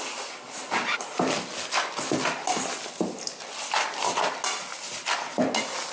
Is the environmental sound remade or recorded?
recorded